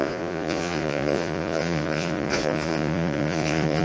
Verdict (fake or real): fake